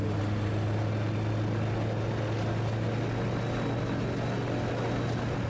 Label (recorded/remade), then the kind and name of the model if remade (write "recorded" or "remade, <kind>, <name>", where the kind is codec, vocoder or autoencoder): recorded